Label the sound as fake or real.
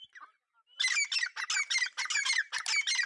real